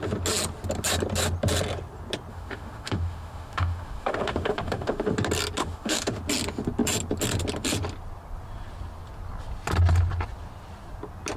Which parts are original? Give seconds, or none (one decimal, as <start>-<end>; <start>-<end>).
0.0-2.3; 5.1-5.6; 6.2-11.4